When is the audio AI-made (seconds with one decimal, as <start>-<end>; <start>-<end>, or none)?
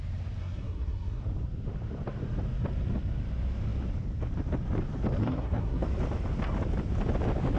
0.4-1.2; 5.2-5.9